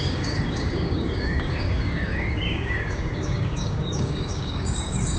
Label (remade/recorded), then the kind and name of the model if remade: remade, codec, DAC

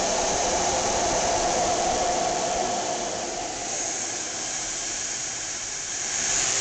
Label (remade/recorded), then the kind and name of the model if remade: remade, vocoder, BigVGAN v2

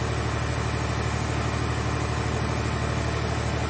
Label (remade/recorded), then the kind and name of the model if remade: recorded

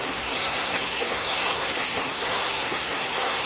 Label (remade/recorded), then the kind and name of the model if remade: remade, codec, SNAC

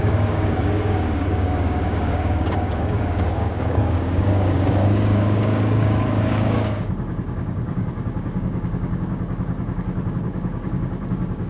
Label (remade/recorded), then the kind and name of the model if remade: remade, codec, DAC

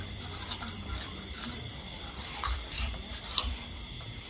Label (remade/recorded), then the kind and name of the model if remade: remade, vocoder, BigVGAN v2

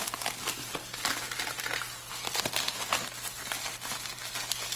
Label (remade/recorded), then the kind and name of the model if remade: recorded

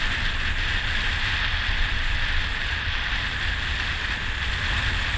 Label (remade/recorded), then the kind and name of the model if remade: recorded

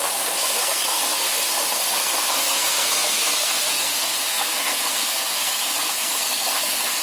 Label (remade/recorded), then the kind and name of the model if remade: remade, codec, SNAC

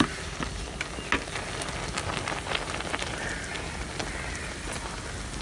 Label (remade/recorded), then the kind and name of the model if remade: recorded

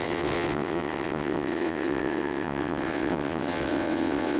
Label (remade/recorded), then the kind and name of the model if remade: remade, vocoder, WaveNeXt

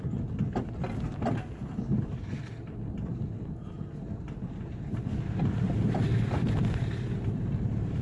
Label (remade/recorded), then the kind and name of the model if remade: recorded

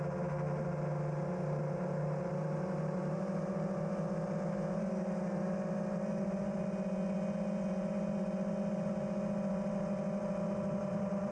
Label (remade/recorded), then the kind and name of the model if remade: recorded